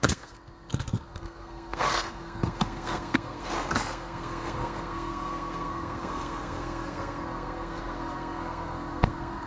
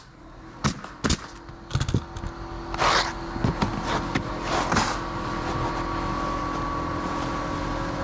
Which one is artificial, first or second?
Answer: first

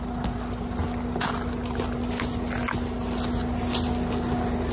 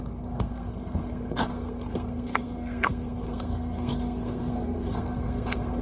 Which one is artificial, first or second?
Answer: second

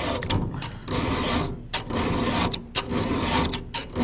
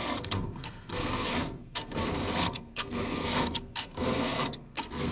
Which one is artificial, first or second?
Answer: second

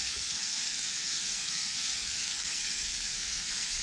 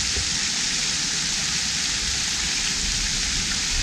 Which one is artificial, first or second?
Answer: first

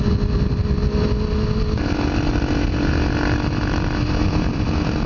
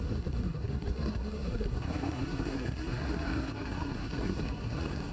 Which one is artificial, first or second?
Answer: second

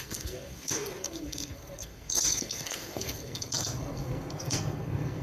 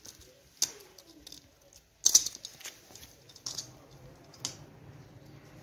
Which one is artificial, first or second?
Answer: first